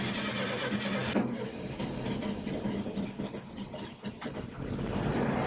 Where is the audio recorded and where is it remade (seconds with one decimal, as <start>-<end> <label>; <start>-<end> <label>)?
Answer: 0.0-5.5 recorded

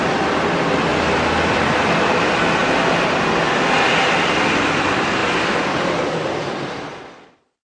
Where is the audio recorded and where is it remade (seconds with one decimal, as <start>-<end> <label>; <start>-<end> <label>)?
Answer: 0.0-0.9 remade; 0.9-1.5 recorded; 1.5-2.6 remade; 2.6-4.1 recorded; 4.1-5.2 remade; 5.2-6.4 recorded; 6.4-7.8 remade

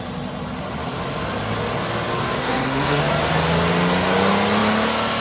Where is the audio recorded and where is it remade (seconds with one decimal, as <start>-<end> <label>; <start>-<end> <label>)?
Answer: 0.0-2.4 recorded; 2.4-3.0 remade; 3.0-5.2 recorded

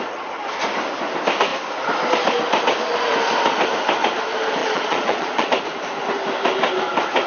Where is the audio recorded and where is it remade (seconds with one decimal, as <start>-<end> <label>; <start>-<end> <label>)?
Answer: 0.0-4.6 recorded; 4.6-5.5 remade; 5.5-7.3 recorded

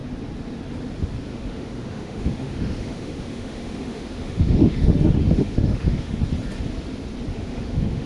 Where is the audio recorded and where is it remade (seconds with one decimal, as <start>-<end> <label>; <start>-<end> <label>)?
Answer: 0.0-1.3 recorded; 1.3-6.2 remade; 6.2-7.3 recorded; 7.3-8.1 remade

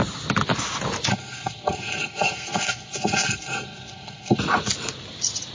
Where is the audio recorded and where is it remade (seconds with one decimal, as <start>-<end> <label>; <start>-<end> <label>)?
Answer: 0.0-1.1 recorded; 1.1-4.4 remade; 4.4-5.5 recorded